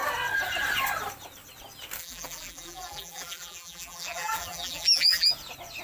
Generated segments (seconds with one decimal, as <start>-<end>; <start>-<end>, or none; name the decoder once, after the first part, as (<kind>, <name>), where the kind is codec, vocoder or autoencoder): 2.0-5.3 (vocoder, BigVGAN v2)